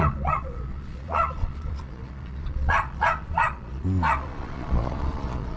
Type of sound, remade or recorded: remade